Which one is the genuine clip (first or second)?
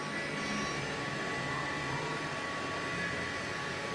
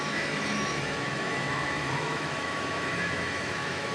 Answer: first